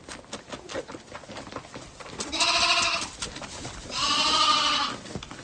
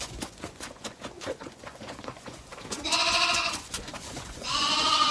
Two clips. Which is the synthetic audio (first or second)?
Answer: second